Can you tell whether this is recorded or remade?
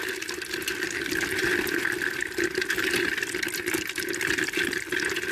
recorded